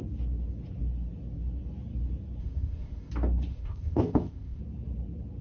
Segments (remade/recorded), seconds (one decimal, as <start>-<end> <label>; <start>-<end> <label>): 0.0-2.4 recorded; 2.4-3.1 remade; 3.1-3.5 recorded; 3.5-4.6 remade; 4.6-5.4 recorded